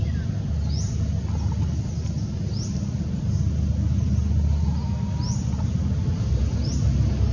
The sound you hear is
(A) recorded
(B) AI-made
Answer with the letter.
A